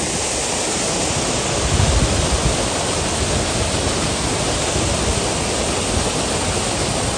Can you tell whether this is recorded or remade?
recorded